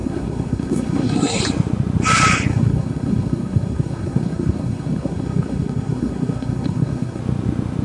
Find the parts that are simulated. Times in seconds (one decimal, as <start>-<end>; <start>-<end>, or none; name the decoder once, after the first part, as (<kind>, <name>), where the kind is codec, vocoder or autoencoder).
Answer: 0.0-1.4 (codec, SNAC); 2.5-7.2

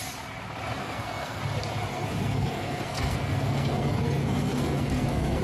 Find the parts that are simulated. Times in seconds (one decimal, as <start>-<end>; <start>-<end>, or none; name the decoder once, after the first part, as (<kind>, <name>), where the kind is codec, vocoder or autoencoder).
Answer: 0.8-1.4 (codec, SNAC); 1.9-5.4